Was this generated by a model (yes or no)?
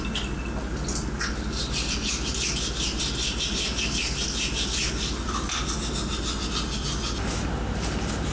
no